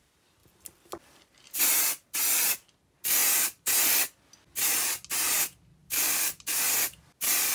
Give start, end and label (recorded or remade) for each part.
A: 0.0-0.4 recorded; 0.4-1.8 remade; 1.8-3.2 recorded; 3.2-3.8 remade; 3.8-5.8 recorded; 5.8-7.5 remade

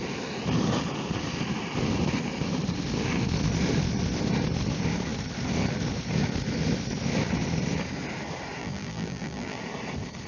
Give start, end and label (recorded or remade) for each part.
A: 0.0-8.6 recorded; 8.6-9.6 remade; 9.6-10.3 recorded

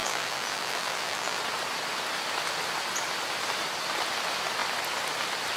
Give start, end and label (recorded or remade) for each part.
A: 0.0-1.4 remade; 1.4-5.6 recorded

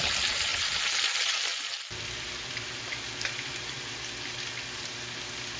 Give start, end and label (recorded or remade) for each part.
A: 0.0-0.5 remade; 0.5-1.1 recorded; 1.1-5.6 remade